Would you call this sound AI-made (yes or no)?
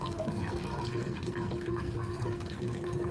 yes